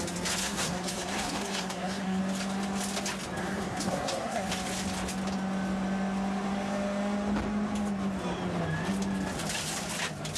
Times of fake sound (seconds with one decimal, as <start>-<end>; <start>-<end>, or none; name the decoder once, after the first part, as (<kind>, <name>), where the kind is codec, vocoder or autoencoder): 0.4-2.2 (codec, SNAC); 3.4-4.5